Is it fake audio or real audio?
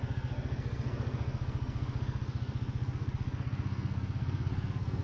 fake